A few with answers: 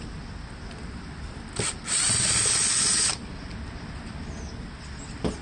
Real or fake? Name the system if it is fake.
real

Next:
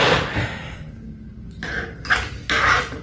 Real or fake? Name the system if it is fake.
real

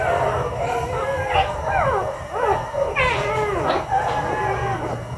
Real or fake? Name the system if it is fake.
real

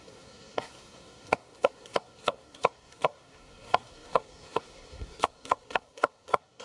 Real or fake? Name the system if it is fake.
fake, codec, SNAC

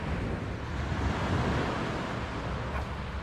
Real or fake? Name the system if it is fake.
real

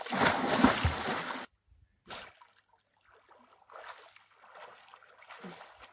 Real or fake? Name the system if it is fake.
real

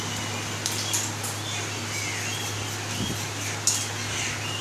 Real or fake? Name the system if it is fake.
real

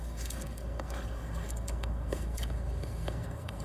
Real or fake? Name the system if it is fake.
fake, codec, SNAC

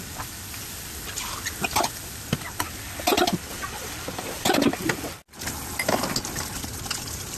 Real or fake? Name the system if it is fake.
real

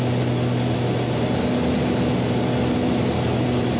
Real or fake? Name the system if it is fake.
real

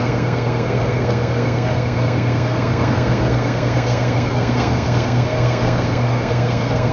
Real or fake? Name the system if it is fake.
fake, codec, SNAC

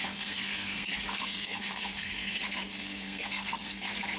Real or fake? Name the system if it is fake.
fake, codec, SNAC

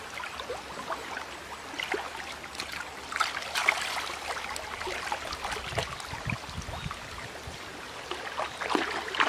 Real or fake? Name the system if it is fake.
real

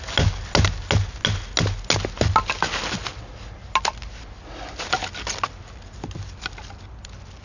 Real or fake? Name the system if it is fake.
real